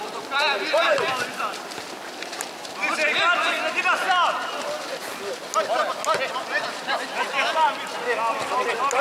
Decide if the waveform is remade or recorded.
recorded